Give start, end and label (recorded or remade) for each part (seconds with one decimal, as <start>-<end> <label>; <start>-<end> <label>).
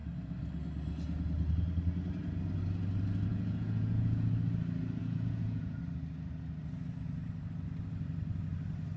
0.0-3.3 recorded; 3.3-4.3 remade; 4.3-5.0 recorded; 5.0-5.8 remade; 5.8-9.0 recorded